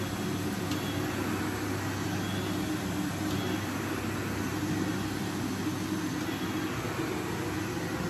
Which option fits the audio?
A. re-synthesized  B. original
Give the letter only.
B